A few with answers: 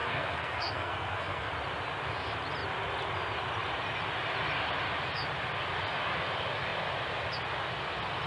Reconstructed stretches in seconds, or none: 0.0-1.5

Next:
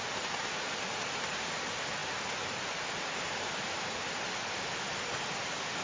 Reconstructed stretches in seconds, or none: none

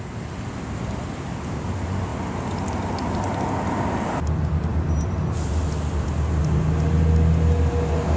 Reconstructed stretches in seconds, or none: none